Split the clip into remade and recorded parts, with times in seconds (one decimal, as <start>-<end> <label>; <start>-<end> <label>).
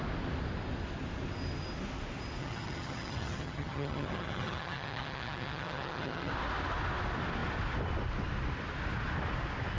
0.0-2.4 recorded; 2.4-6.3 remade; 6.3-9.8 recorded